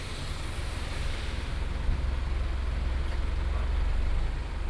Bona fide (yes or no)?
yes